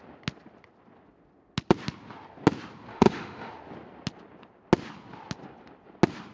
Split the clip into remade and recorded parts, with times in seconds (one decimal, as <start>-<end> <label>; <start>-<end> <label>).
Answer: 0.0-2.9 recorded; 2.9-3.5 remade; 3.5-6.3 recorded